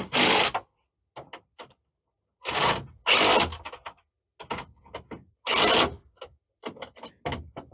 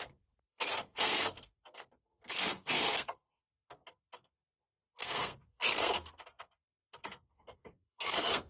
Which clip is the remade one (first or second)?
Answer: second